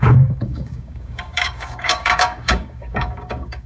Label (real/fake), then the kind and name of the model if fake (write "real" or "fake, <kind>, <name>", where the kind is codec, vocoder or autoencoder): fake, codec, DAC